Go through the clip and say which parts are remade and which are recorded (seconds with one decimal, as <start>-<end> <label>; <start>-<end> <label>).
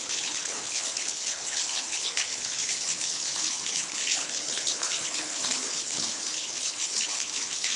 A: 0.0-7.8 remade